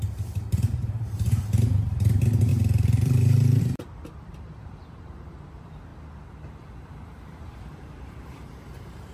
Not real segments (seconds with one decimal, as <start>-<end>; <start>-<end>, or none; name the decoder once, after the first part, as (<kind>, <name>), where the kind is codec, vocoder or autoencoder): 0.0-5.9 (vocoder, BigVGAN v2); 6.8-9.1